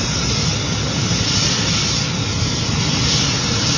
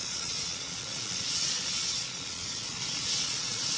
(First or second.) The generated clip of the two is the second